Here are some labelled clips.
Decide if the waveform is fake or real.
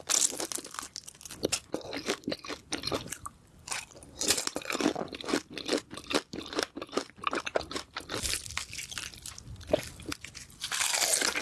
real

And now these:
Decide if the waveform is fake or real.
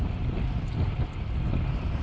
real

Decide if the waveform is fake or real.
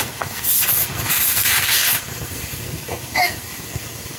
fake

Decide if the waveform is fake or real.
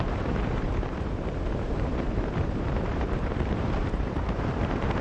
fake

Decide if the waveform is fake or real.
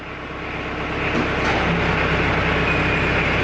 real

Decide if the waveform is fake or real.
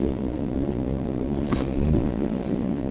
fake